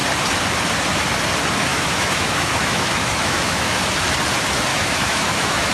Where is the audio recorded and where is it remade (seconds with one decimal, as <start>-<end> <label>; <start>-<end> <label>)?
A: 0.0-1.7 recorded; 1.7-3.8 remade; 3.8-4.7 recorded; 4.7-5.7 remade